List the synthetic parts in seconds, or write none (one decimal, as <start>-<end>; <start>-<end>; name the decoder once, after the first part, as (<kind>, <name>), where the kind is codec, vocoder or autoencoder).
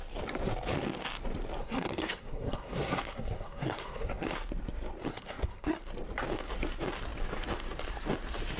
1.6-4.3 (codec, SNAC); 5.1-5.8